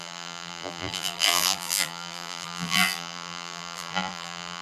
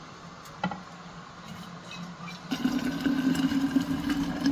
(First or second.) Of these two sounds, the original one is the second